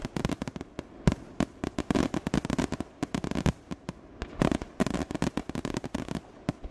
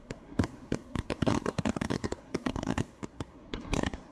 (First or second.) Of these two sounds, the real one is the first